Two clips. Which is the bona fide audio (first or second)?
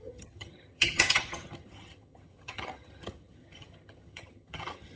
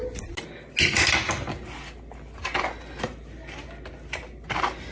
second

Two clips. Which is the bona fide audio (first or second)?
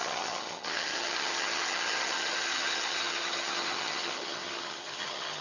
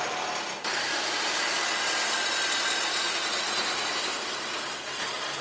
second